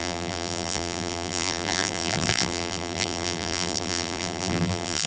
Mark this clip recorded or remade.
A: remade